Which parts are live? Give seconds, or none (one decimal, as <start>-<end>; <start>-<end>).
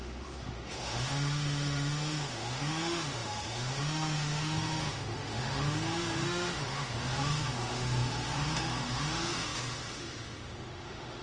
none